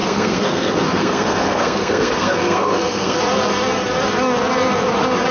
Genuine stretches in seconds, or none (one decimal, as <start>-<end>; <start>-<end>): 3.2-5.3